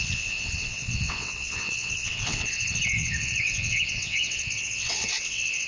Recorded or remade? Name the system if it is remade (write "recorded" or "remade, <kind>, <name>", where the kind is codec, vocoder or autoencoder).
remade, vocoder, WaveNeXt